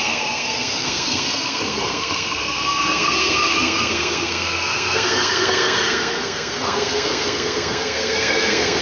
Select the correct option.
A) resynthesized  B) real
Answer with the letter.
A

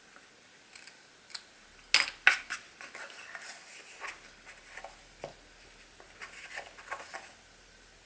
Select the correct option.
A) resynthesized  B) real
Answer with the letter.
B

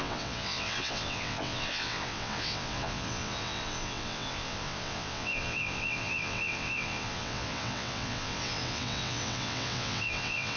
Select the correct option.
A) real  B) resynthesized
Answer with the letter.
B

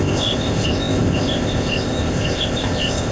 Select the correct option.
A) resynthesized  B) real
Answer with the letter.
A